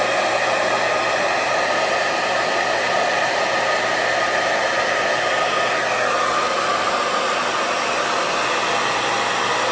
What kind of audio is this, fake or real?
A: real